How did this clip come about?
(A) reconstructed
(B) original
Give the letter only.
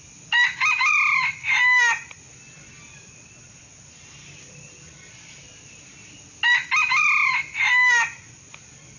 B